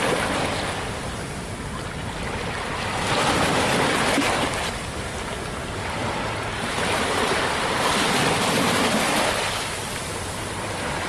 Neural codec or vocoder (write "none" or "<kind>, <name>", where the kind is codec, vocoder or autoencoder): none